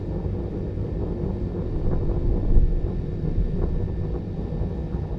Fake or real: real